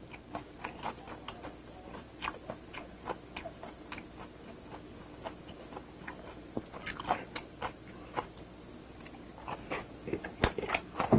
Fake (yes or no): no